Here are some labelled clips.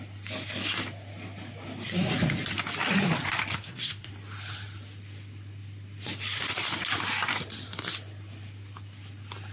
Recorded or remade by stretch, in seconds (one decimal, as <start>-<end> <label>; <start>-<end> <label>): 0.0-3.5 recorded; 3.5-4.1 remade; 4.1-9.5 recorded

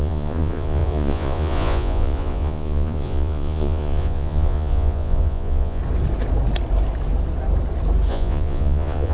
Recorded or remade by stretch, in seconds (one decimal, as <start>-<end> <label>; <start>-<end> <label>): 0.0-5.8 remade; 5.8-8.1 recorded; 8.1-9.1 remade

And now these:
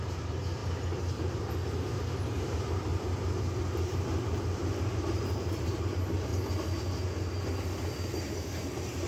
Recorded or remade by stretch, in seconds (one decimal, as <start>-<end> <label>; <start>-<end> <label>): 0.0-0.6 remade; 0.6-1.3 recorded; 1.3-2.9 remade; 2.9-3.8 recorded; 3.8-6.3 remade; 6.3-8.2 recorded; 8.2-9.1 remade

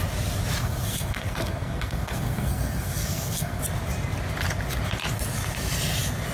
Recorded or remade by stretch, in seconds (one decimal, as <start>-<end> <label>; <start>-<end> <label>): 0.0-0.6 recorded; 0.6-3.6 remade; 3.6-6.3 recorded

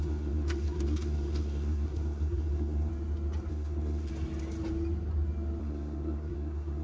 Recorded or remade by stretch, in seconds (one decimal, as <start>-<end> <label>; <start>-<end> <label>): 0.0-2.9 remade; 2.9-3.5 recorded; 3.5-4.1 remade; 4.1-5.6 recorded; 5.6-6.8 remade